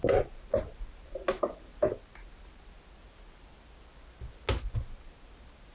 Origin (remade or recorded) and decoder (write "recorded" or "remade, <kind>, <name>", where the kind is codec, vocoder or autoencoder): recorded